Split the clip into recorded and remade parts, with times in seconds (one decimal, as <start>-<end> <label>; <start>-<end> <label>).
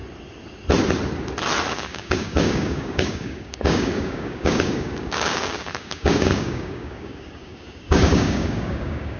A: 0.0-1.7 recorded; 1.7-9.2 remade